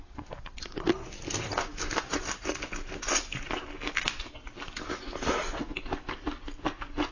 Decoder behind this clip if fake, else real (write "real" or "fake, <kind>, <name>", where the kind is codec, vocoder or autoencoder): real